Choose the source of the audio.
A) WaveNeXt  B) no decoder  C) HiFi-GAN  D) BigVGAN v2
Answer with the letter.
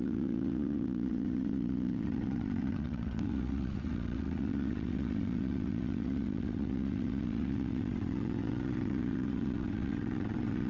A